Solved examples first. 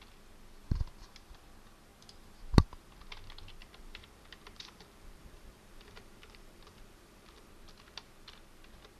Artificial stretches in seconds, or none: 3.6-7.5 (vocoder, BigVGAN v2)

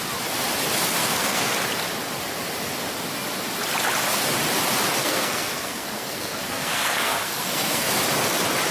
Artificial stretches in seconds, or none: 1.0-1.5 (codec, SNAC); 5.0-7.9

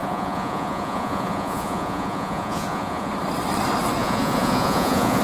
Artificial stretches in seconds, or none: 0.0-3.1 (vocoder, Vocos); 4.0-5.2